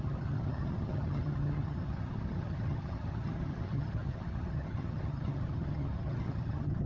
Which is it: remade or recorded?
remade